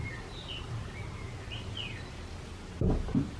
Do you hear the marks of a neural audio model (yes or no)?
no